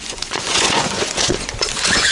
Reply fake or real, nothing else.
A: fake